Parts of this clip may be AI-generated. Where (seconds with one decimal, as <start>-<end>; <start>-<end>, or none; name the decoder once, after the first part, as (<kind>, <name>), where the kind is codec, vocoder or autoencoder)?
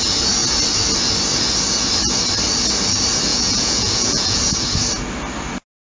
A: 3.3-4.4 (vocoder, Vocos)